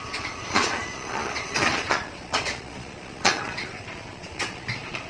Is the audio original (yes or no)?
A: no